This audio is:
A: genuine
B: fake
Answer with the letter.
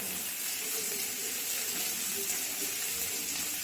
B